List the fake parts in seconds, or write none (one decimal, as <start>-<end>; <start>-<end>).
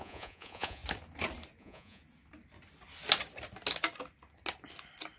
0.0-0.8; 1.6-2.0